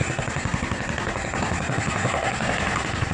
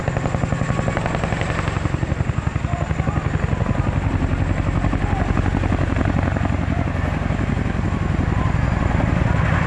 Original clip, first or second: second